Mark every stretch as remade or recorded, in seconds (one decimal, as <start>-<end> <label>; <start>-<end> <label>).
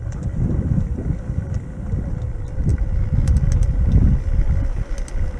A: 0.0-5.4 recorded